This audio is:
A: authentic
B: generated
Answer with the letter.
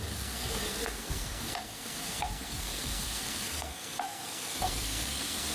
B